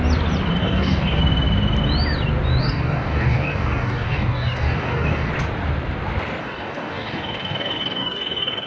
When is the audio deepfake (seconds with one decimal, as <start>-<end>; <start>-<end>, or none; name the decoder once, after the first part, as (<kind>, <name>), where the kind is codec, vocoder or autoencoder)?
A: 0.6-1.2 (codec, DAC); 2.6-5.3; 6.4-8.7